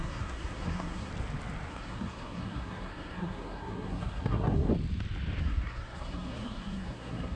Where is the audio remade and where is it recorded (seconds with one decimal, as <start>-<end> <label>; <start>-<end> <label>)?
0.0-1.1 remade; 1.1-1.7 recorded; 1.7-4.7 remade; 4.7-5.4 recorded; 5.4-7.4 remade